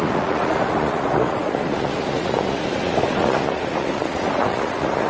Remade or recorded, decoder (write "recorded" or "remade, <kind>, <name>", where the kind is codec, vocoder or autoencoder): remade, vocoder, Vocos